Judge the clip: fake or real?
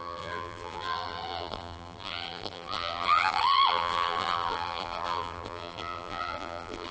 fake